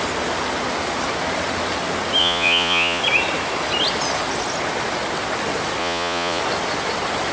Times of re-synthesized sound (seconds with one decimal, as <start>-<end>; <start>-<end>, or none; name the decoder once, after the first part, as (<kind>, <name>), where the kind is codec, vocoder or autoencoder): 2.2-3.0 (vocoder, Vocos); 5.8-6.4